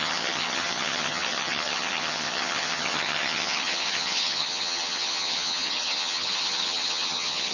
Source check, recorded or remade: remade